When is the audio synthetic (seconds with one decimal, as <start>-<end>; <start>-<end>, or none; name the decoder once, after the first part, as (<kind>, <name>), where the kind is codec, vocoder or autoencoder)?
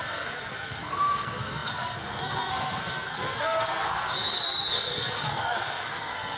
0.0-6.4 (codec, SNAC)